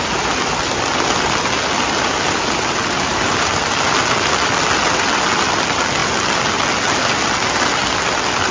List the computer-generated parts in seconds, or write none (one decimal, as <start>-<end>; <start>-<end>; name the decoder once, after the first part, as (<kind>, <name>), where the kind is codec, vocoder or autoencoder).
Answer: none